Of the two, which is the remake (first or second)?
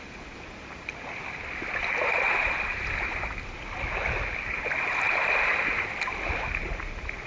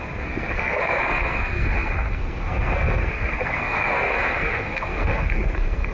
second